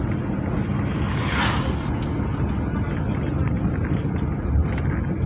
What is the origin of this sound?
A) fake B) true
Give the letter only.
B